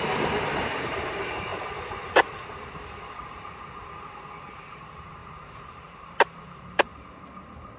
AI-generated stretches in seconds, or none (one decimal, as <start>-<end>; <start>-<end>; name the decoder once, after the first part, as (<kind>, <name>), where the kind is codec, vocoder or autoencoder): 0.0-6.9 (vocoder, BigVGAN v2)